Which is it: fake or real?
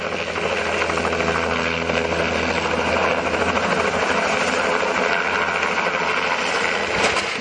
real